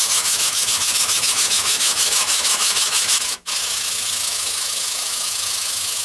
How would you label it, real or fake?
fake